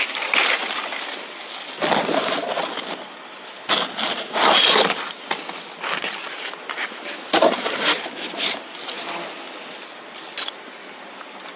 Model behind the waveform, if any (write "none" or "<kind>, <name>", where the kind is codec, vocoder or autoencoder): none